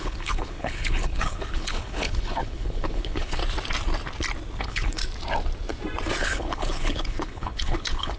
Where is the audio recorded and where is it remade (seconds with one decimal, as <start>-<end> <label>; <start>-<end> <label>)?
0.0-3.4 remade; 3.4-4.6 recorded; 4.6-5.0 remade; 5.0-6.2 recorded; 6.2-8.2 remade

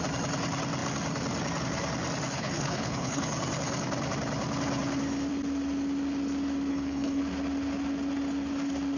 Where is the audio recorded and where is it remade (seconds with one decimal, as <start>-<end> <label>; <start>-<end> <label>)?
0.0-2.3 recorded; 2.3-3.2 remade; 3.2-6.7 recorded; 6.7-7.2 remade; 7.2-9.0 recorded

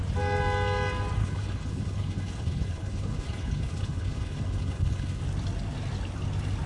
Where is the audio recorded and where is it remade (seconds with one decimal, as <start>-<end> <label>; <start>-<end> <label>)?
0.0-1.2 recorded; 1.2-5.2 remade; 5.2-6.7 recorded

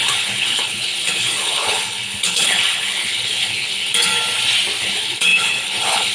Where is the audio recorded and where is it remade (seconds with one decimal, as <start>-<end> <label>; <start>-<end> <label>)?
0.0-4.1 remade; 4.1-4.8 recorded; 4.8-6.1 remade

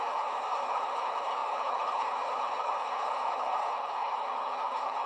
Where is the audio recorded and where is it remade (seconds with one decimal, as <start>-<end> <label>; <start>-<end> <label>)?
0.0-5.1 remade

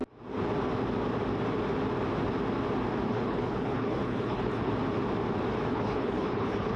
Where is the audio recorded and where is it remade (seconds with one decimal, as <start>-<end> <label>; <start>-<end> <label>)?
0.0-3.1 recorded; 3.1-4.7 remade; 4.7-5.7 recorded; 5.7-6.8 remade

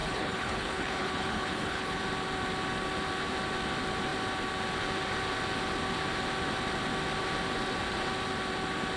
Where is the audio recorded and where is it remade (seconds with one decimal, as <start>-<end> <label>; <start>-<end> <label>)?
0.0-2.0 remade; 2.0-9.0 recorded